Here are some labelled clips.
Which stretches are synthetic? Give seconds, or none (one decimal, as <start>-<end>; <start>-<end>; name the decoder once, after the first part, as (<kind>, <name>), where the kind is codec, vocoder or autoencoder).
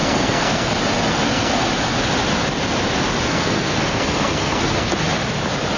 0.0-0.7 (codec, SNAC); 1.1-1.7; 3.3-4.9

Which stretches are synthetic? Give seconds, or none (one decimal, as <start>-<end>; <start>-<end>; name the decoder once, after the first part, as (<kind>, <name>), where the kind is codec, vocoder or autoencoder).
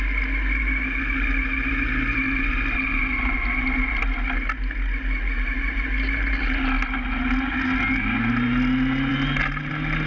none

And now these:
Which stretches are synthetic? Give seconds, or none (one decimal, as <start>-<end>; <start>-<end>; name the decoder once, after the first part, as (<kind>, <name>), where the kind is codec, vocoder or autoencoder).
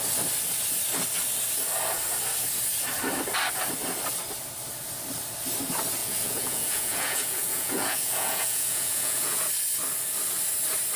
6.0-9.4 (vocoder, Vocos)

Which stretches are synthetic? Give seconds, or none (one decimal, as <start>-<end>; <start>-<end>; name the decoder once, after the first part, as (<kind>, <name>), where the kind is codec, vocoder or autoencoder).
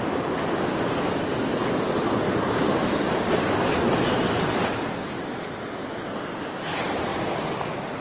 7.1-8.0 (vocoder, BigVGAN v2)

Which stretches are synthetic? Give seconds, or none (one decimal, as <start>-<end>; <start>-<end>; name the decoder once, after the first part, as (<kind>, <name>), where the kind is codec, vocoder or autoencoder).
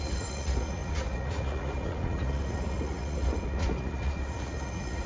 0.0-5.1 (vocoder, Vocos)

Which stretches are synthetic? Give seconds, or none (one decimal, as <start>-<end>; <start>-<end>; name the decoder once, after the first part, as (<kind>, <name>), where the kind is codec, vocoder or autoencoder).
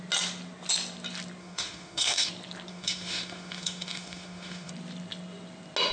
1.4-2.3 (autoencoder, DAC-VAE); 2.7-4.7